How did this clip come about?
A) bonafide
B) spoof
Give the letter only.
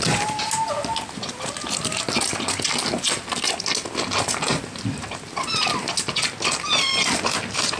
A